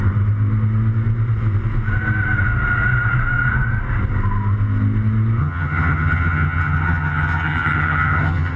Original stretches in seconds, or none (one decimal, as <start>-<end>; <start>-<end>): 0.0-5.4